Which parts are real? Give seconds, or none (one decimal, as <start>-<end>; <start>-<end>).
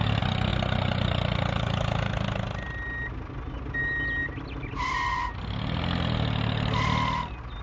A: 0.0-7.6